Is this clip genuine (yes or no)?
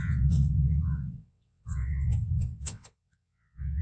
no